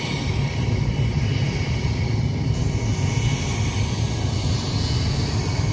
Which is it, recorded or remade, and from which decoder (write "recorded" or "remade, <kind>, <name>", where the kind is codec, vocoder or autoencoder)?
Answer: recorded